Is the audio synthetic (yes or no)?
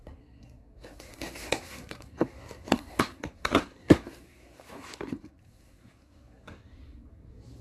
yes